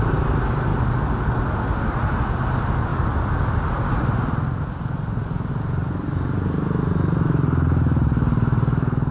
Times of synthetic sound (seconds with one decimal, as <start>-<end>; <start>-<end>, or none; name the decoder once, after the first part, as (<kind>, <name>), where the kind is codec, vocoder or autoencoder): none